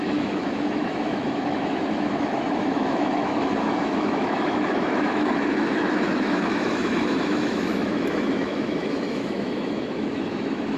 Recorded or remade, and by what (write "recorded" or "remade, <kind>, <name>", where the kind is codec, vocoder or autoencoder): remade, autoencoder, DAC-VAE